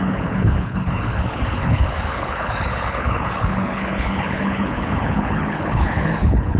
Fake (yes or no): yes